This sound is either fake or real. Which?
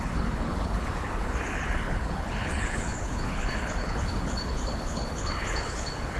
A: fake